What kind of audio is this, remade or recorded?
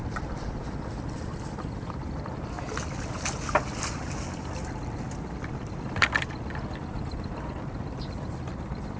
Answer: recorded